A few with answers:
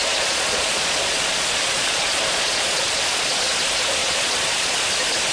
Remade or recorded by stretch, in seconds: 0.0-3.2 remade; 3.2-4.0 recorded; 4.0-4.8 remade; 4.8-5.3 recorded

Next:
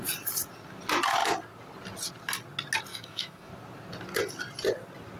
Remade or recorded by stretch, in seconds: 0.0-2.9 recorded; 2.9-3.5 remade; 3.5-5.2 recorded

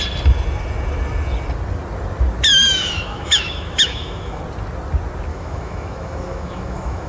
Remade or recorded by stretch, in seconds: 0.0-2.5 recorded; 2.5-4.4 remade; 4.4-5.3 recorded; 5.3-7.1 remade

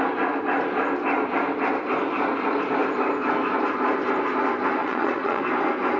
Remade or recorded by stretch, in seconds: 0.0-4.8 recorded; 4.8-5.4 remade; 5.4-6.0 recorded